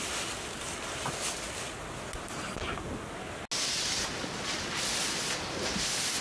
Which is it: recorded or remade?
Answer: recorded